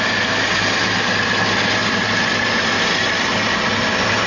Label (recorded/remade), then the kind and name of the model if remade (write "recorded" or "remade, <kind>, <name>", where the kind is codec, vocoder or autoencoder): recorded